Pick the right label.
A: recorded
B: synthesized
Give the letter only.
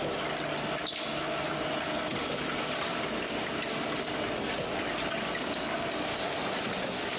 A